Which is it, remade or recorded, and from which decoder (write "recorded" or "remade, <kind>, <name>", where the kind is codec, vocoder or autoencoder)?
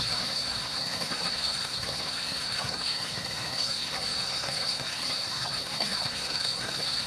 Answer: remade, codec, SNAC